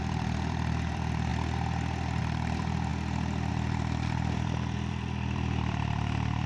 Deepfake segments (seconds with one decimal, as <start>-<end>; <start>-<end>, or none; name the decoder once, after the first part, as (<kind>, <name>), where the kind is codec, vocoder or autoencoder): 0.0-1.3 (vocoder, BigVGAN v2); 2.2-2.9; 3.5-6.5